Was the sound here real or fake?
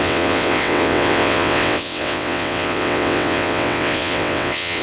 fake